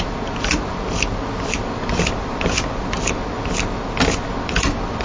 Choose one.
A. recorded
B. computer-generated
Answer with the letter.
A